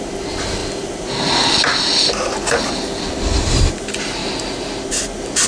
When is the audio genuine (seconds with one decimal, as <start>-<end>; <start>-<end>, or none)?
0.0-4.2